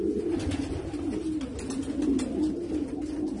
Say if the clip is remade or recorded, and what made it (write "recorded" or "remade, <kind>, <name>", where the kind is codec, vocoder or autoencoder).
recorded